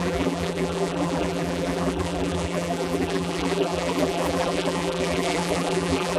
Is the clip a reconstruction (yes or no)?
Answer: yes